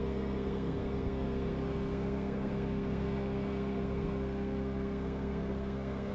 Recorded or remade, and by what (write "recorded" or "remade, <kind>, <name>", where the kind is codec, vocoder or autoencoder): remade, codec, SNAC